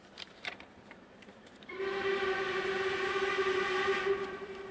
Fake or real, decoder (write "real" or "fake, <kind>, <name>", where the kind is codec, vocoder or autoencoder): fake, vocoder, BigVGAN v2